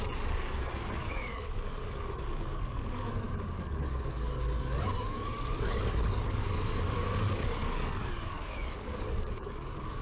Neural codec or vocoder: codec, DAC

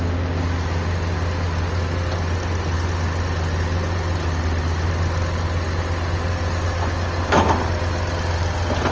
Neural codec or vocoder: none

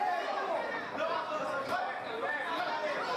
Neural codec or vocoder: none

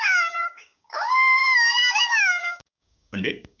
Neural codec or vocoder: codec, DAC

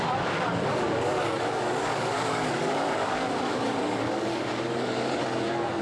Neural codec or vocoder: codec, DAC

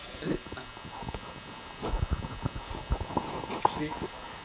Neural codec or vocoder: none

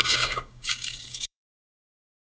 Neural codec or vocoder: codec, DAC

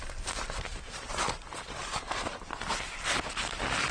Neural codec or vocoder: none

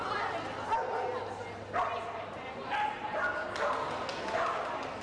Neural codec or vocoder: none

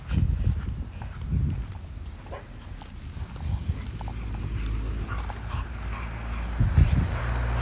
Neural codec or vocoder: none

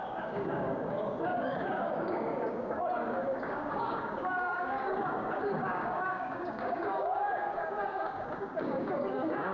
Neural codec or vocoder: codec, DAC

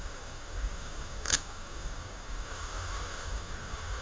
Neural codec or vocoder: codec, DAC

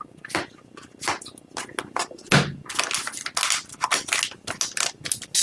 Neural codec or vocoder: none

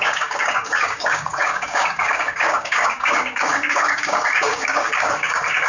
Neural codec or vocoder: codec, DAC